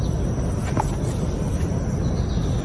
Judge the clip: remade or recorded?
recorded